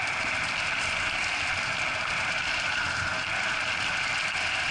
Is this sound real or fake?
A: fake